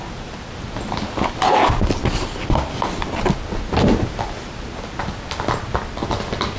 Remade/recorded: recorded